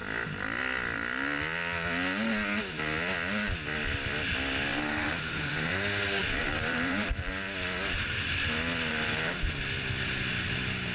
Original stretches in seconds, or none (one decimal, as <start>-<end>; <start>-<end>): 0.0-4.7; 5.7-6.4; 7.3-8.9; 9.4-10.9